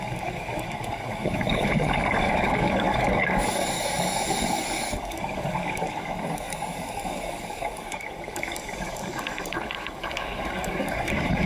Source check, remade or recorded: remade